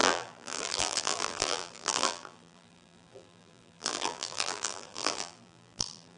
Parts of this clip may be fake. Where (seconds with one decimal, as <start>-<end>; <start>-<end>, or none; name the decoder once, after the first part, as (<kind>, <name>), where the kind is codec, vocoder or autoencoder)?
0.0-6.2 (vocoder, BigVGAN v2)